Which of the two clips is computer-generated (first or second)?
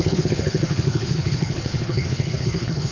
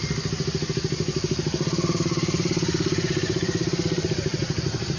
first